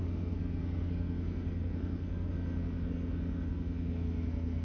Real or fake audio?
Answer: fake